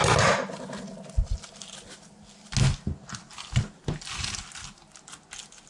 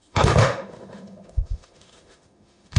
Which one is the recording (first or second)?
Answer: first